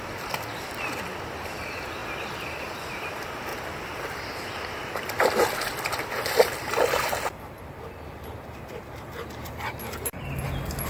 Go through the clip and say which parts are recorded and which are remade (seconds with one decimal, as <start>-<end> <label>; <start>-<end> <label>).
0.0-2.0 recorded; 2.0-2.7 remade; 2.7-3.5 recorded; 3.5-7.6 remade; 7.6-10.9 recorded